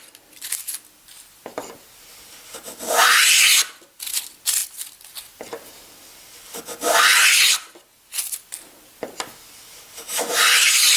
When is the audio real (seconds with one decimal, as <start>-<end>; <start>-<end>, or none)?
0.0-11.0